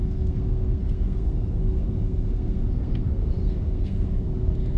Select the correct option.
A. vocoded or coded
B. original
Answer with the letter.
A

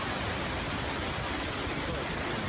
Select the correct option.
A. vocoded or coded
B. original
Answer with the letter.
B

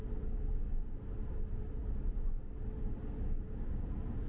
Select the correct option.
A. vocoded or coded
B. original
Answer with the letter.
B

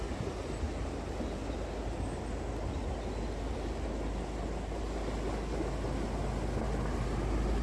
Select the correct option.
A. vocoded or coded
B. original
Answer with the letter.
B